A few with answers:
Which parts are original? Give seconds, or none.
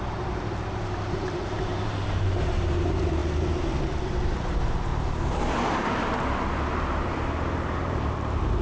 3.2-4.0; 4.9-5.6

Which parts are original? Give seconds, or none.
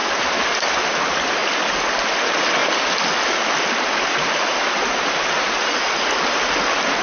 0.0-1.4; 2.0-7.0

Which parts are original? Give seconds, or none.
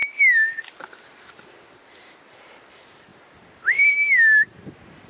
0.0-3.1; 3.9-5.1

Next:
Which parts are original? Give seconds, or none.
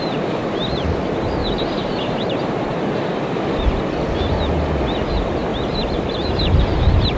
0.0-1.4; 2.9-5.5; 6.3-7.2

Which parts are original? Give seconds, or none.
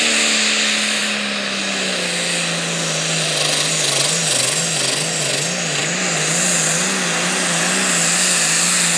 0.0-9.0